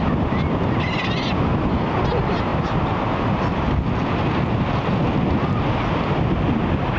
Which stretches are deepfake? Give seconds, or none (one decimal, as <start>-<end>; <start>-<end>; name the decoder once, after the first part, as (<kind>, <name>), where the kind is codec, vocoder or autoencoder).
none